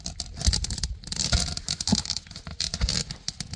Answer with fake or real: real